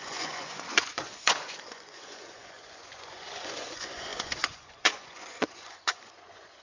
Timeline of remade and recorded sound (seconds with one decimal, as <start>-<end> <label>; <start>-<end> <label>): 0.0-6.6 remade